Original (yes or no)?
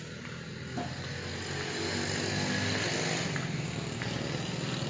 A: yes